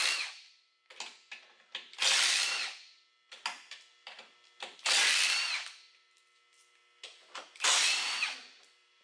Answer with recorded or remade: recorded